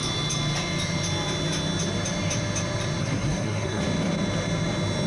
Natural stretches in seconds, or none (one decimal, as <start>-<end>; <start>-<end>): 0.0-3.0; 3.8-5.1